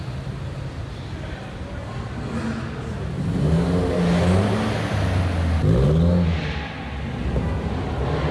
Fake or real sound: real